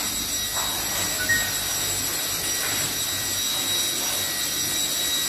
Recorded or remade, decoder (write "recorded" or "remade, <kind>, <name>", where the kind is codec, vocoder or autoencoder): recorded